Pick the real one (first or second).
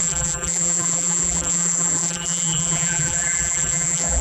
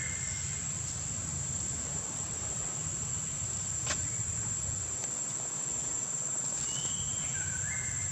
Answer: second